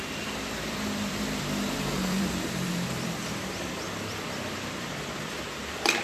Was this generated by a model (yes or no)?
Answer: yes